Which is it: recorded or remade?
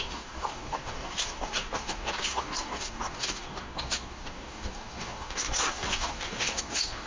remade